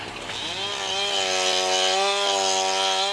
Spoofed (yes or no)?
no